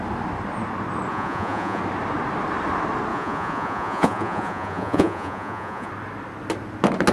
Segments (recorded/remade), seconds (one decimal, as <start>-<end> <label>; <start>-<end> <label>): 0.0-1.1 recorded; 1.1-1.8 remade; 1.8-3.1 recorded; 3.1-5.9 remade; 5.9-7.1 recorded